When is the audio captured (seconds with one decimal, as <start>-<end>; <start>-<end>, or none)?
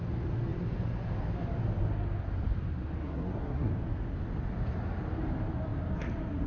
0.0-3.0; 3.7-6.5